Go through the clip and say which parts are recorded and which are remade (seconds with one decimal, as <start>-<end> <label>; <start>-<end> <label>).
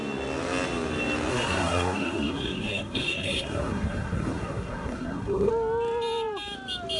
0.0-1.3 recorded; 1.3-5.5 remade; 5.5-7.0 recorded